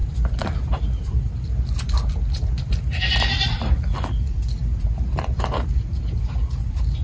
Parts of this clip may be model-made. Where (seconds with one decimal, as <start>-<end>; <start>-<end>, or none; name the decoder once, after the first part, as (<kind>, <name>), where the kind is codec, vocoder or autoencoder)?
none